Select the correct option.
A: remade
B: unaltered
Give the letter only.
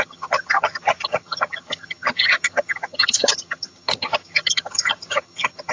A